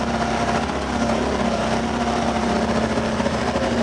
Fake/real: fake